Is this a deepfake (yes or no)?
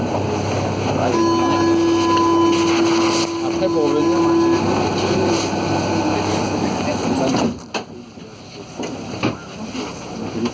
no